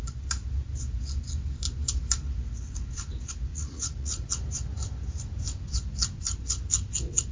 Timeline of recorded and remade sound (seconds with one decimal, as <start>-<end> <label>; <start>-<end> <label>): 0.0-3.5 recorded; 3.5-4.3 remade; 4.3-7.3 recorded